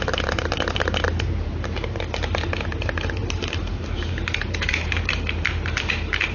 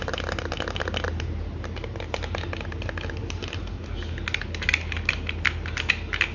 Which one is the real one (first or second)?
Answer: second